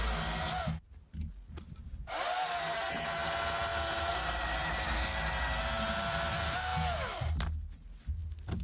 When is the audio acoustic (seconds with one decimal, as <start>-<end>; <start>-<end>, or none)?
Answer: 0.0-8.6